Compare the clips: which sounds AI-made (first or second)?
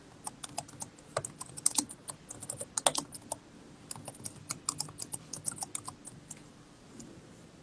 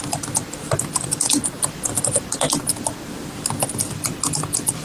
second